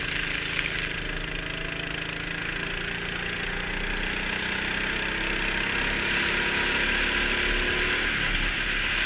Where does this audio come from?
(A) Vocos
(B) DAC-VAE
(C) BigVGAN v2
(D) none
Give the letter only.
D